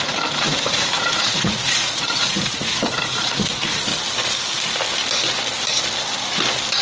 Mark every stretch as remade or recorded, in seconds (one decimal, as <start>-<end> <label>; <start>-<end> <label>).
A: 0.0-3.9 remade; 3.9-6.8 recorded